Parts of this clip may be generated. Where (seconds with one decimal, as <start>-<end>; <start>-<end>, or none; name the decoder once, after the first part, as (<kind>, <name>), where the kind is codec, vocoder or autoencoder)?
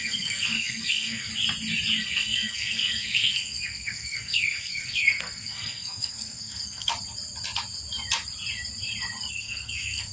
0.0-1.3 (codec, SNAC); 2.0-6.9; 9.3-10.1